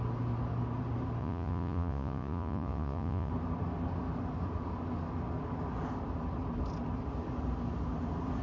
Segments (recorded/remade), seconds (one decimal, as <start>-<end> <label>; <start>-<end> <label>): 0.0-1.2 recorded; 1.2-3.3 remade; 3.3-8.4 recorded